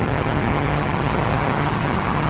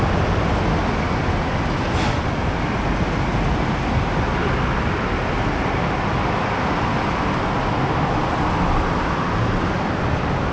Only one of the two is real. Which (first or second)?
second